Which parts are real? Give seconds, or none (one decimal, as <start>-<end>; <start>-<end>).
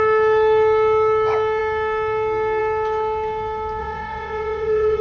0.0-3.8